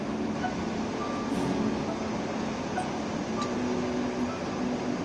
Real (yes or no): yes